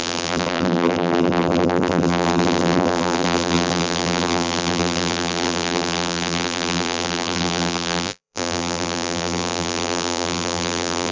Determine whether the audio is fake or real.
fake